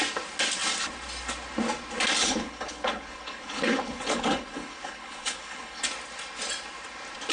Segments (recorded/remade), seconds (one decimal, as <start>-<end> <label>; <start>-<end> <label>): 0.0-2.2 recorded; 2.2-5.8 remade; 5.8-7.3 recorded